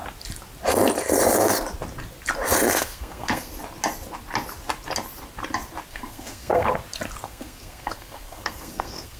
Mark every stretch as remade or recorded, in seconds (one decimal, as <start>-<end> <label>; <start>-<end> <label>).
0.0-2.8 recorded; 2.8-3.5 remade; 3.5-5.9 recorded; 5.9-6.7 remade; 6.7-7.2 recorded; 7.2-9.2 remade